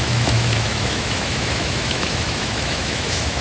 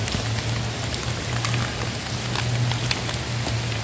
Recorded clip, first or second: second